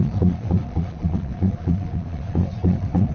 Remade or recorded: remade